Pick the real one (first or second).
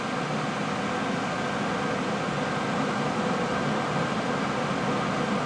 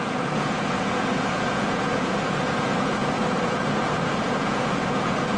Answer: first